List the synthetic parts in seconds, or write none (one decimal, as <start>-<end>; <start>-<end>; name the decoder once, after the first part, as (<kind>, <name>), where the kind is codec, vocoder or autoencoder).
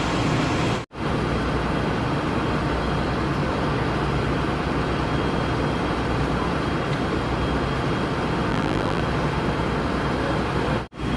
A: 8.5-9.0 (vocoder, BigVGAN v2)